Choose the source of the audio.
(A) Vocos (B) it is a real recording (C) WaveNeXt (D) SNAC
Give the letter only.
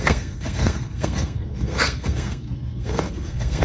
D